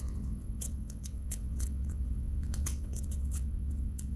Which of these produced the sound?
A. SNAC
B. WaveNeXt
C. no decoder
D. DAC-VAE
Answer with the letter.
B